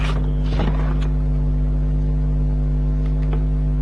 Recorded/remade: recorded